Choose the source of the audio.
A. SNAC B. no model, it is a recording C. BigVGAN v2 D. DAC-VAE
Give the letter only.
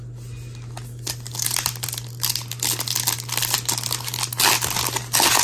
B